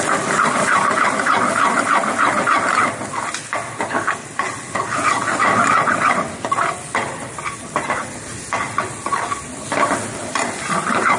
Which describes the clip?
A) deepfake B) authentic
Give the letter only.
B